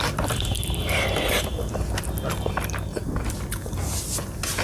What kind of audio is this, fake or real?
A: real